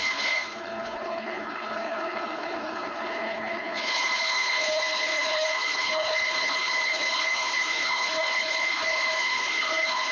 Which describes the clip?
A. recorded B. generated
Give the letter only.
B